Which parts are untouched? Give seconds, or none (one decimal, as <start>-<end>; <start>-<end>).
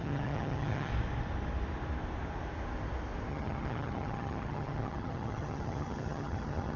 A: 0.9-3.3